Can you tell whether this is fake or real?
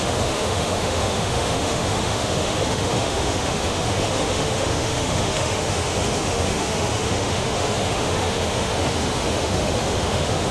fake